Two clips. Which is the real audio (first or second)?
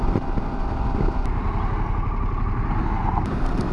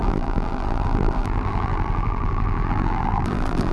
first